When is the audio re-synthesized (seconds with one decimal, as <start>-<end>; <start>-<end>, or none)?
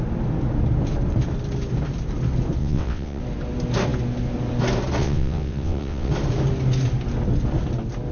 2.6-3.2; 5.0-6.1